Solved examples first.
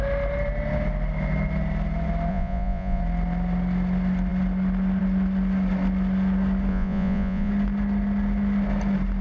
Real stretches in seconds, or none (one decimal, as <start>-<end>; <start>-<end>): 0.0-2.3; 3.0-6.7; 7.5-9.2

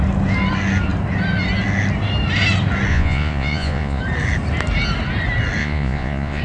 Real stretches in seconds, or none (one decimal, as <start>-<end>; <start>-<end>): 0.0-2.9; 4.0-5.6

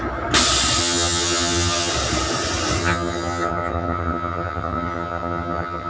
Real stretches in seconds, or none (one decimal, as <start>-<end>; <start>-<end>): 0.0-0.8; 1.9-2.8

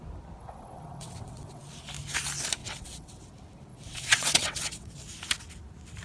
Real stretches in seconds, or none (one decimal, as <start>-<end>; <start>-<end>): 0.0-0.4; 1.6-2.6; 3.3-3.7; 4.9-6.0